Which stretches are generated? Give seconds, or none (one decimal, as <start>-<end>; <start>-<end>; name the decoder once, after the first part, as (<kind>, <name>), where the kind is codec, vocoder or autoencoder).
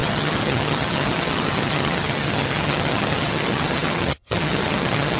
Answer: 0.0-5.2 (vocoder, HiFi-GAN)